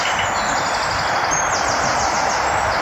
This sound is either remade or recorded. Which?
recorded